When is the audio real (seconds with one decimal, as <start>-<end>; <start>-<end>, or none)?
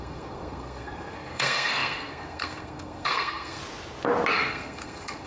3.6-4.3